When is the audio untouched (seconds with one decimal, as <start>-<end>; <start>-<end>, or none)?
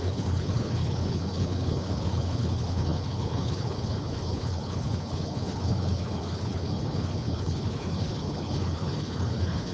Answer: none